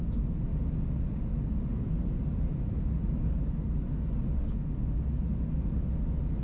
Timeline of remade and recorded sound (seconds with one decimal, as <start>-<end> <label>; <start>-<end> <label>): 0.0-2.5 recorded; 2.5-4.1 remade; 4.1-6.4 recorded